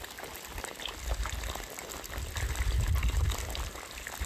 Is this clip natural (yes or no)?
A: yes